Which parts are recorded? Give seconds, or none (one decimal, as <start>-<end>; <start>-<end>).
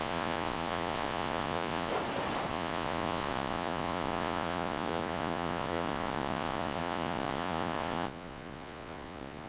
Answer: 1.9-2.5